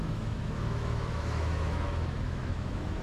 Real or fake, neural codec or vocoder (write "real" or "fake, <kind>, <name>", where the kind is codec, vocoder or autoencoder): fake, autoencoder, DAC-VAE